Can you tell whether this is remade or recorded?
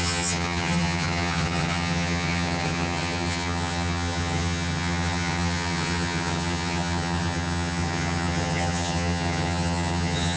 remade